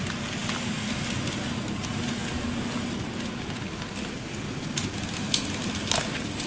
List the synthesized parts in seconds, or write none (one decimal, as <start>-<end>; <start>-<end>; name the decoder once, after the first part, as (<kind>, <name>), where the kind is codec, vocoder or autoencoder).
none